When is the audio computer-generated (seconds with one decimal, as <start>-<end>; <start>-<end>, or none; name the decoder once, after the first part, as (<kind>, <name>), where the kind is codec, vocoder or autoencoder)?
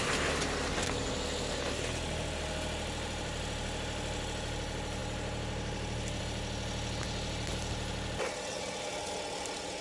none